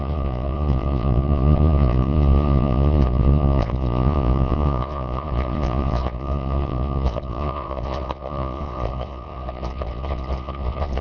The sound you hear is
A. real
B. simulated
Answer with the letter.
B